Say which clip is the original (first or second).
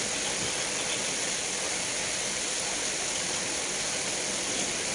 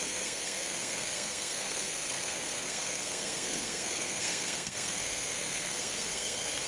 first